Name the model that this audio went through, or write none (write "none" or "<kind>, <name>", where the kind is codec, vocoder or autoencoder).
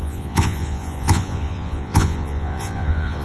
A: vocoder, Vocos